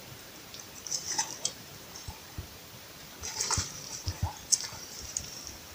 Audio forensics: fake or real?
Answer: fake